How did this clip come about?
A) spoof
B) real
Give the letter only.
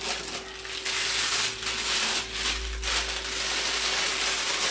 B